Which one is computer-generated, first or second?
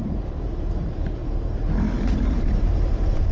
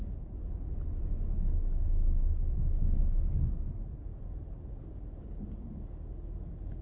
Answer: first